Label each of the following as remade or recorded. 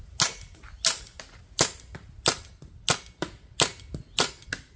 recorded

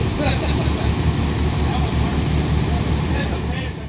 remade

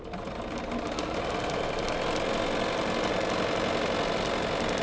recorded